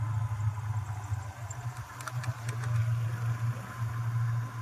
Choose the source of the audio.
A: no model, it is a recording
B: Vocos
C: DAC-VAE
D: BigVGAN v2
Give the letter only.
A